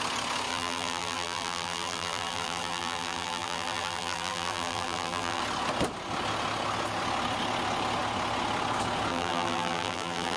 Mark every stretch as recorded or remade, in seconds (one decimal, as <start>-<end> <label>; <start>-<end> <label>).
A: 0.0-0.5 recorded; 0.5-5.4 remade; 5.4-9.1 recorded; 9.1-10.4 remade